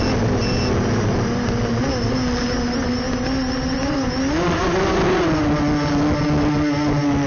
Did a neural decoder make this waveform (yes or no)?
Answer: no